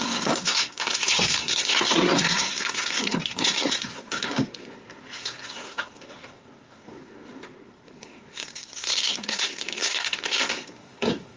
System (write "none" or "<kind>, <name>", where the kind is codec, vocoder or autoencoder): codec, SNAC